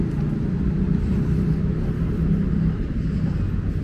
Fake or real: real